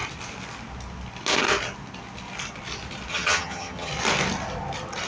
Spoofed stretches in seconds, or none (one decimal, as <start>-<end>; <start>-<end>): 3.1-3.9